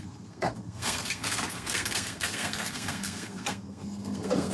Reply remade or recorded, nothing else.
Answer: remade